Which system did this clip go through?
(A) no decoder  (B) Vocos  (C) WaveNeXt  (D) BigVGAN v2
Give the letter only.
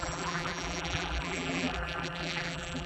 D